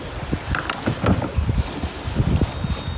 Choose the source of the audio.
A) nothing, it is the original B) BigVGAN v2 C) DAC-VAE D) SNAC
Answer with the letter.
B